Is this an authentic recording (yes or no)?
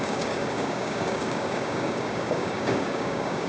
no